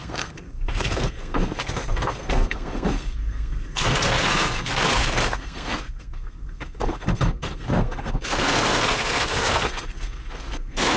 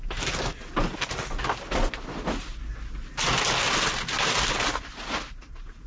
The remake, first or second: first